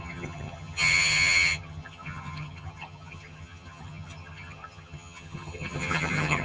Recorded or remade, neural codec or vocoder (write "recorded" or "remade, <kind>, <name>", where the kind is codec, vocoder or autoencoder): remade, vocoder, HiFi-GAN